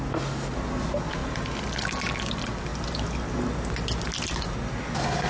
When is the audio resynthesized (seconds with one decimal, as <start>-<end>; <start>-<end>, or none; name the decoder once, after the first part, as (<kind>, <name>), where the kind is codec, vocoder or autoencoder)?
none

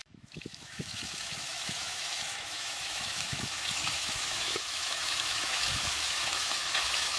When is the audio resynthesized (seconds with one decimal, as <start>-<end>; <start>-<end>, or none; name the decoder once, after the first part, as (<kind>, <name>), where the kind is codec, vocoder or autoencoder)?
0.0-7.2 (autoencoder, DAC-VAE)

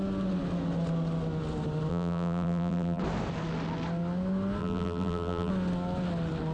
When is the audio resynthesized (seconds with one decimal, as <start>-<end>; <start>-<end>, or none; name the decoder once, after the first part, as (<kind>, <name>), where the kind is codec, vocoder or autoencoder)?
1.9-3.0 (vocoder, BigVGAN v2); 4.6-5.5